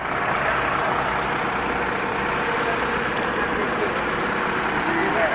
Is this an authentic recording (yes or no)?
yes